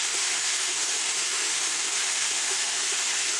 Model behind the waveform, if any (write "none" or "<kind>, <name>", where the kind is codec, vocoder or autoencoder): autoencoder, DAC-VAE